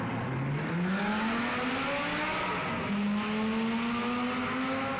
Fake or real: real